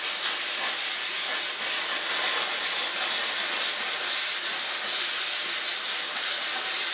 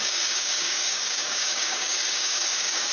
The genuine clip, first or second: first